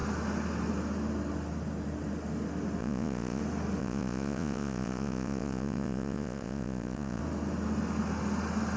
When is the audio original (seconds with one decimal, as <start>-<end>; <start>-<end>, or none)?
0.0-2.8; 3.4-3.8; 7.2-8.8